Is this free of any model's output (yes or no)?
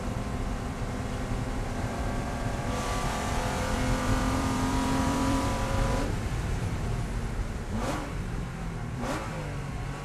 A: no